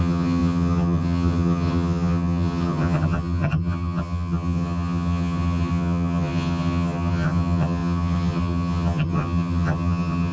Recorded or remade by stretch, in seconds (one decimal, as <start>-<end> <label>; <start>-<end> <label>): 0.0-10.3 remade